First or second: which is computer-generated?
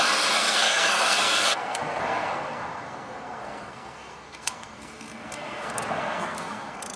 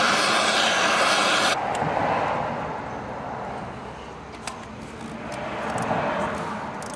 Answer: first